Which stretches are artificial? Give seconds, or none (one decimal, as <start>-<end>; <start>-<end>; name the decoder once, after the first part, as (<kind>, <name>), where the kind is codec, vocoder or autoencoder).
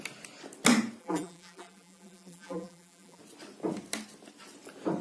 1.0-3.2 (vocoder, BigVGAN v2)